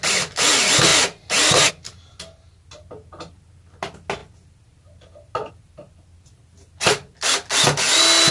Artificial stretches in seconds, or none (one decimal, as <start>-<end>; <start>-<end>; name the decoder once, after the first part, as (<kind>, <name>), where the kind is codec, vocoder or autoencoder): none